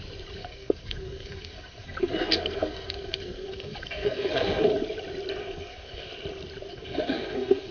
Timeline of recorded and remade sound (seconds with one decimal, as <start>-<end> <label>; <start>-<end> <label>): 0.0-0.4 recorded; 0.4-4.7 remade; 4.7-5.4 recorded; 5.4-6.1 remade; 6.1-6.7 recorded; 6.7-7.7 remade